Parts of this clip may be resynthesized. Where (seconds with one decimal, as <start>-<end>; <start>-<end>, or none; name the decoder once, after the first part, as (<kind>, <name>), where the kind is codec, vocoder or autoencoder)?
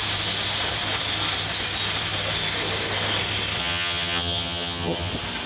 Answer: 3.6-5.1 (vocoder, HiFi-GAN)